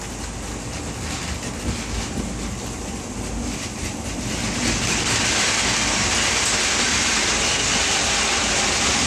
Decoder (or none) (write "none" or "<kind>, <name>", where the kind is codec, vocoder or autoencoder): none